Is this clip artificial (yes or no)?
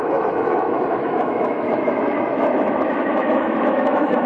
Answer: yes